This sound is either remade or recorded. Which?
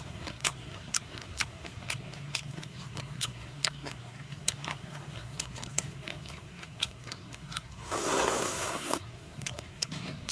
remade